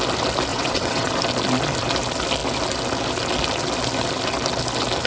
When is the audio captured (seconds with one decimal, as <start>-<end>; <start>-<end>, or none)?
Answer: 0.0-0.5; 1.1-5.1

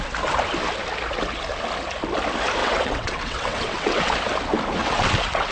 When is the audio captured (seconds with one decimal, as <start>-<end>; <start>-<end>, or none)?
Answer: 0.0-2.6; 4.1-4.8

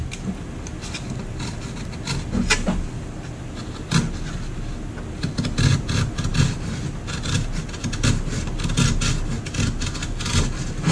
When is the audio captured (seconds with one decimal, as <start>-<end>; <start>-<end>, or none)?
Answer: 0.0-10.9

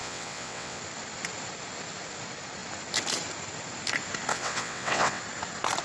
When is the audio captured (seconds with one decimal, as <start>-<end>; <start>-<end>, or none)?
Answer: 0.8-4.3; 5.2-5.8

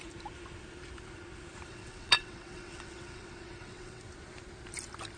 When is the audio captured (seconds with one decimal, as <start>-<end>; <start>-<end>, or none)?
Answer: 0.0-1.7; 4.0-5.2